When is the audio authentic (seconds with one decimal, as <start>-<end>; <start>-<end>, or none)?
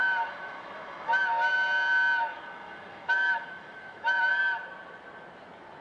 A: 1.1-2.3; 4.2-5.8